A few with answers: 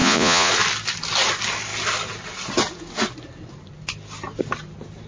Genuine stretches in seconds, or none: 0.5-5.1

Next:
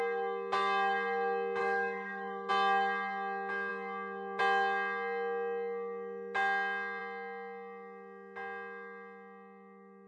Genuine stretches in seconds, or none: 0.0-1.6; 2.5-10.1

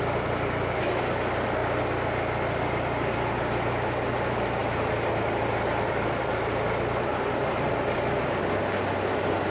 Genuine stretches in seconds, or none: 0.0-4.6; 8.4-9.5

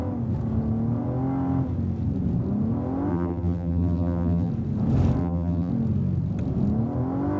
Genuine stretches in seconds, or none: 0.0-3.1; 4.5-5.2; 5.7-7.4

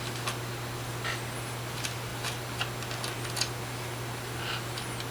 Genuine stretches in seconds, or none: 0.0-5.1